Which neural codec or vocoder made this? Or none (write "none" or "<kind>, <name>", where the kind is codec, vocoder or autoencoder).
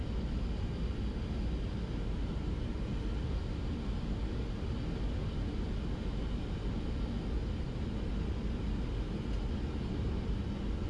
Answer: none